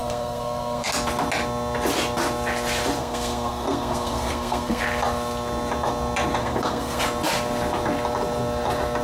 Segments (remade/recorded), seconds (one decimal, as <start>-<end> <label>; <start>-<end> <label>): 0.0-0.9 remade; 0.9-3.0 recorded; 3.0-4.8 remade; 4.8-6.4 recorded; 6.4-7.0 remade; 7.0-9.0 recorded